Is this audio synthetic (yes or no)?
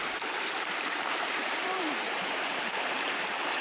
yes